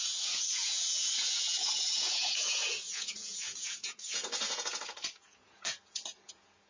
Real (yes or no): no